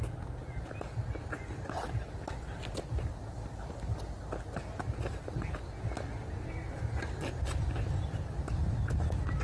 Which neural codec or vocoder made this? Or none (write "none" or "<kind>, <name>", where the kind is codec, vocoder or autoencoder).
none